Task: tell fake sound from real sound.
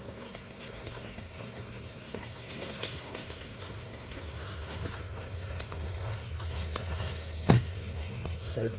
fake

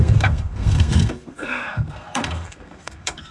fake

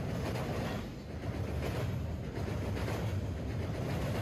real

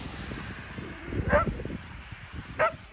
real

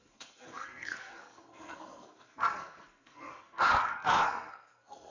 fake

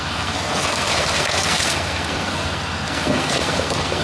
fake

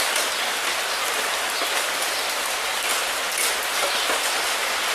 real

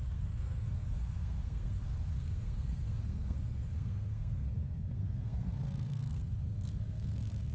fake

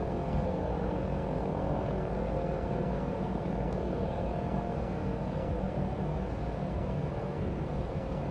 fake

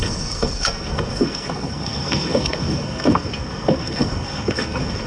fake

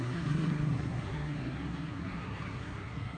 fake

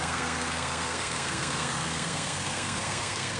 fake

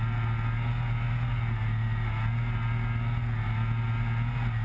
real